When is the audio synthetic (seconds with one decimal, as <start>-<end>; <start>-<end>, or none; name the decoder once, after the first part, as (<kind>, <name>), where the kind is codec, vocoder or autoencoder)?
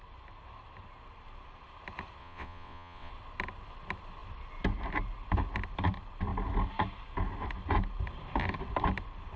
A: 2.2-3.1 (vocoder, WaveNeXt)